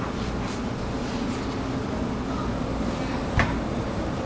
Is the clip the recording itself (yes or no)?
yes